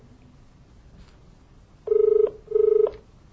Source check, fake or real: real